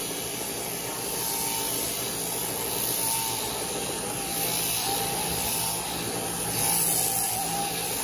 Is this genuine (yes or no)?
yes